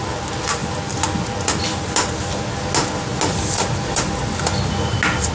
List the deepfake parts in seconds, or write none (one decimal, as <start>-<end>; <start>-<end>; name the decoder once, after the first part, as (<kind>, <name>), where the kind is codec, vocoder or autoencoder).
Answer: none